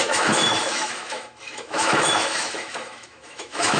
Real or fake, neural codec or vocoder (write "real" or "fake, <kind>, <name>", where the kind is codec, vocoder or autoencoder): fake, autoencoder, DAC-VAE